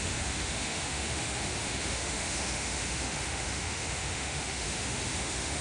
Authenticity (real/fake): fake